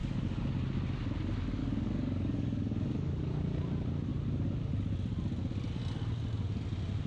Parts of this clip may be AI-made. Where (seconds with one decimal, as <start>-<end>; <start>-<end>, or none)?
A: 0.0-0.5; 1.6-3.6